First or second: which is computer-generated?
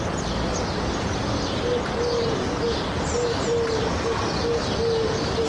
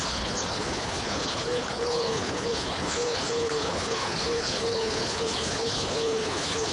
second